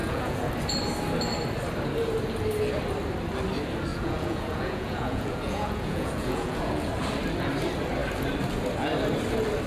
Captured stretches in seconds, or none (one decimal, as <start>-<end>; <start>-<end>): 0.5-3.9; 6.9-9.7